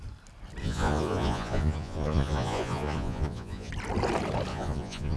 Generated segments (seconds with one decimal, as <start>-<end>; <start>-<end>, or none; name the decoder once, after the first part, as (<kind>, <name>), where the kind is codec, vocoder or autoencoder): 0.6-3.7 (vocoder, Vocos); 4.5-5.2